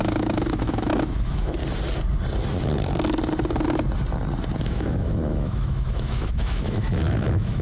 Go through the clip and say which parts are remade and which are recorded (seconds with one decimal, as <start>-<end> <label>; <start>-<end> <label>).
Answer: 0.0-1.6 remade; 1.6-4.6 recorded; 4.6-7.6 remade